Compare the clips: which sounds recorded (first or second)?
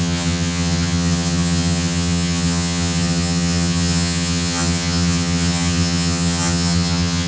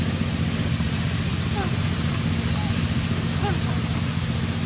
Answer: second